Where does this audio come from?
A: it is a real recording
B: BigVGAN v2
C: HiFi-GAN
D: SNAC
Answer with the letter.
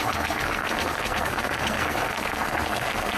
D